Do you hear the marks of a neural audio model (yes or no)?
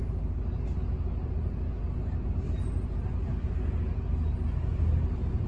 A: no